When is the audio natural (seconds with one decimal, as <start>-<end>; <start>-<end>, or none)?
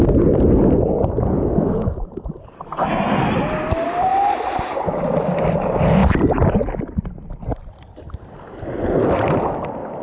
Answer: 0.0-10.0